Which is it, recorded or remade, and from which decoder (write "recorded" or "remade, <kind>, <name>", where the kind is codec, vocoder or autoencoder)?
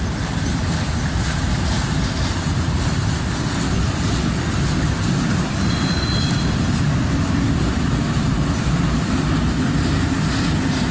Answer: recorded